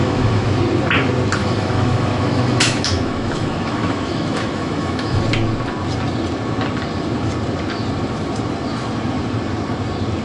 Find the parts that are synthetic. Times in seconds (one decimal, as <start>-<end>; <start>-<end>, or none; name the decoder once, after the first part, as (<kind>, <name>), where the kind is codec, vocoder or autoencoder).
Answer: 0.0-0.6 (autoencoder, DAC-VAE); 1.4-5.2